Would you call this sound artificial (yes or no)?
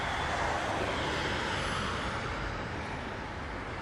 no